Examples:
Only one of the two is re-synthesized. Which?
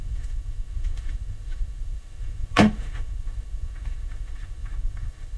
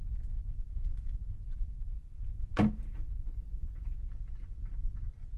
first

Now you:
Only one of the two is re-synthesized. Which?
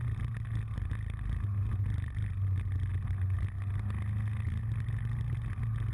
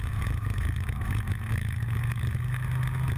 second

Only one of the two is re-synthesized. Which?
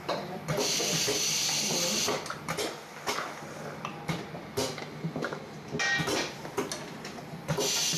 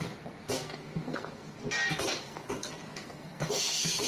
second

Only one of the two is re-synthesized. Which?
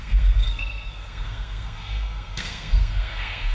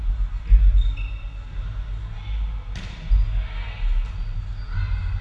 first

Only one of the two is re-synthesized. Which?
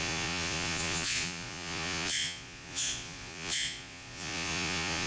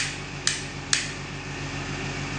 first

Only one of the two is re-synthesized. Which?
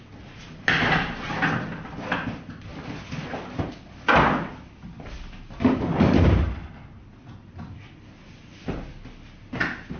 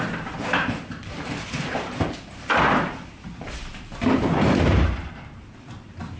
second